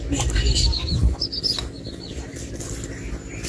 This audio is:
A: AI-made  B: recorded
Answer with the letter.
B